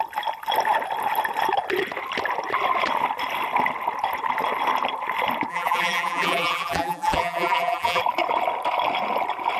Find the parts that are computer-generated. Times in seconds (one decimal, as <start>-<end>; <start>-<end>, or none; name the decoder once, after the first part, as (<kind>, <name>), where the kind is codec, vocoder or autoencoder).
5.5-8.0 (vocoder, BigVGAN v2)